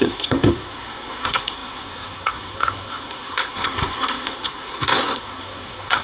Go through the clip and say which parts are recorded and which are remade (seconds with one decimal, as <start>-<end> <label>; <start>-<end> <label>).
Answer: 0.0-6.0 remade